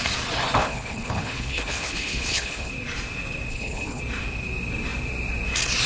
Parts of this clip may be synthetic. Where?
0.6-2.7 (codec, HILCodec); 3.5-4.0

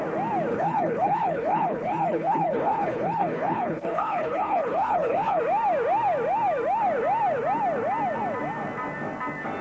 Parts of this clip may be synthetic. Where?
0.5-5.4 (codec, HILCodec)

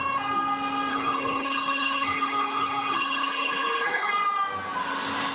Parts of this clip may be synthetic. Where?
0.9-4.1 (codec, HILCodec)